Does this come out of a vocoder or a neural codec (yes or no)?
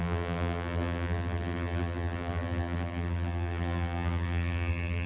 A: yes